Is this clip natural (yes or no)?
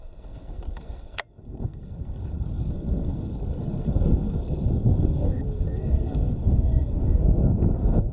no